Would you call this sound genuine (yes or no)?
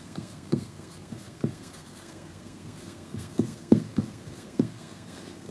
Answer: no